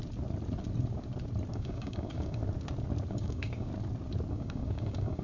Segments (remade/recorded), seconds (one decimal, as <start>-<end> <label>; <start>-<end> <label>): 0.0-1.5 recorded; 1.5-2.4 remade; 2.4-3.1 recorded; 3.1-3.7 remade; 3.7-4.3 recorded; 4.3-5.2 remade